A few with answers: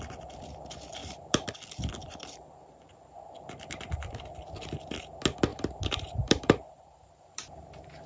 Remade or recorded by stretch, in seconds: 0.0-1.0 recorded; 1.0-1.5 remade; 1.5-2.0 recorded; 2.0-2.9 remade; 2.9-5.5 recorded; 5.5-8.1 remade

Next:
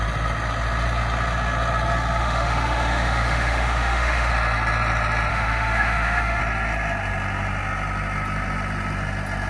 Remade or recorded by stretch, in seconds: 0.0-2.2 recorded; 2.2-4.3 remade; 4.3-5.3 recorded; 5.3-6.4 remade; 6.4-9.5 recorded

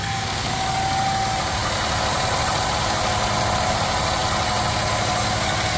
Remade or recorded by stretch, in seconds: 0.0-0.5 remade; 0.5-5.8 recorded

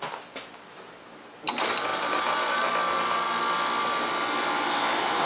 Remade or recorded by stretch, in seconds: 0.0-1.9 recorded; 1.9-2.7 remade; 2.7-5.3 recorded

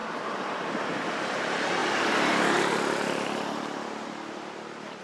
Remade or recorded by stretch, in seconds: 0.0-1.1 remade; 1.1-1.8 recorded; 1.8-5.0 remade

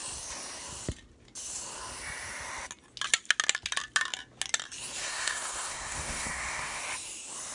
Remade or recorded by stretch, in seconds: 0.0-5.0 recorded; 5.0-6.8 remade; 6.8-7.5 recorded

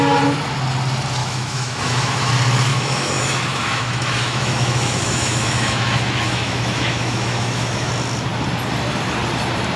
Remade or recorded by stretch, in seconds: 0.0-1.2 recorded; 1.2-2.3 remade; 2.3-2.7 recorded; 2.7-7.9 remade; 7.9-9.8 recorded

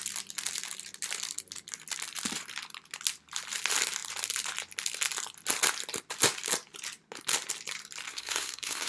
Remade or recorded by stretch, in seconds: 0.0-8.1 recorded; 8.1-8.9 remade